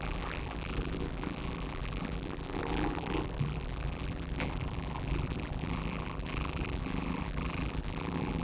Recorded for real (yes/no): no